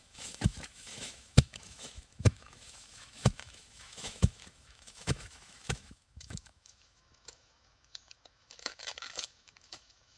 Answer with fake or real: fake